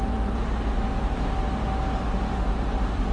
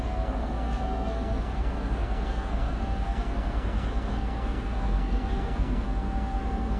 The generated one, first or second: second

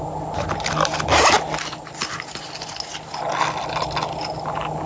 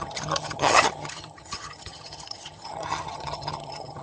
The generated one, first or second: second